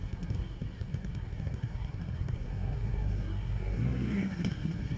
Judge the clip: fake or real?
fake